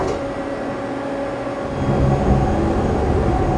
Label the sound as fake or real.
real